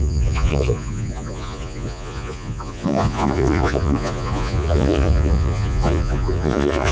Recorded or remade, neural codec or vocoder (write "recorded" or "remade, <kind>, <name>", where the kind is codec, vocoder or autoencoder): remade, vocoder, Vocos